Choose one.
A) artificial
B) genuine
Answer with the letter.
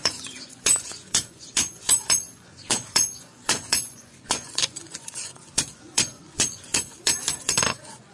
A